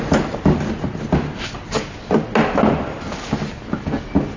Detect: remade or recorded recorded